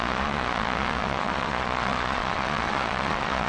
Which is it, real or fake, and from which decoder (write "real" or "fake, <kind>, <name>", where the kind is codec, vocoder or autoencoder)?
fake, vocoder, Vocos